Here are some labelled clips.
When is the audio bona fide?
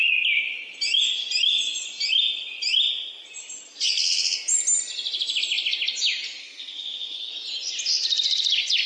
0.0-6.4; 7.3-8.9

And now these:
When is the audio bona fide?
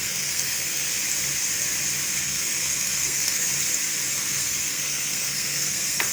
0.9-2.2; 3.5-4.1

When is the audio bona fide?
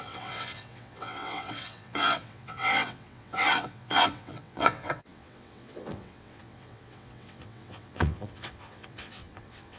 none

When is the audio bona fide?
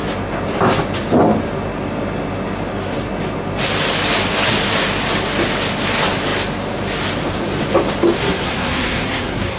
0.0-8.2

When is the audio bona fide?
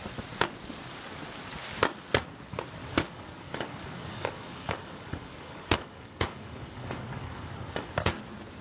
0.0-2.8; 7.9-8.6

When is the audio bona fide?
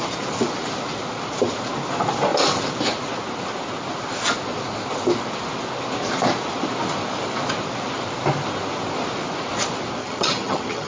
0.0-10.0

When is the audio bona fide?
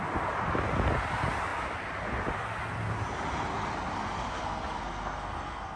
0.0-4.3